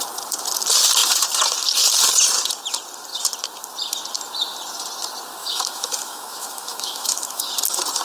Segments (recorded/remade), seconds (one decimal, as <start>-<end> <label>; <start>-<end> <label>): 0.0-5.4 recorded; 5.4-7.5 remade; 7.5-8.0 recorded